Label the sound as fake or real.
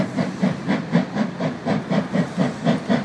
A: real